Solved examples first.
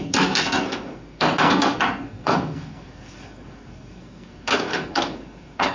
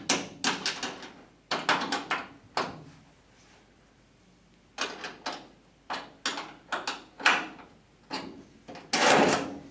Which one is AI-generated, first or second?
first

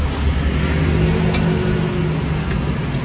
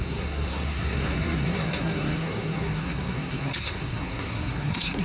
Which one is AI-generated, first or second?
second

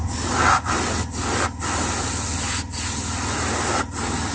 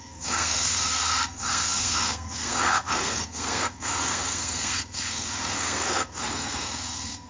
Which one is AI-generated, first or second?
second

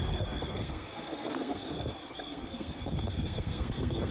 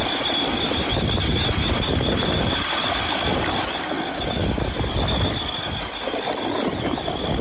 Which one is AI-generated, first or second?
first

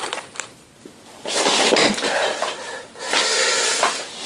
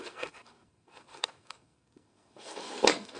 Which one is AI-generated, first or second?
second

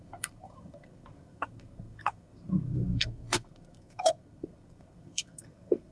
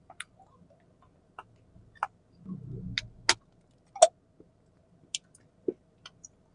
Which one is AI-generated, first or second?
first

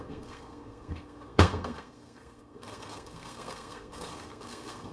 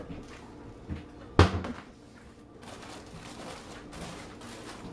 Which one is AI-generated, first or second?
first